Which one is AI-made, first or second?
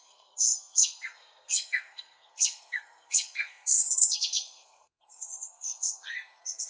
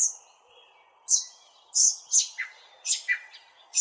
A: first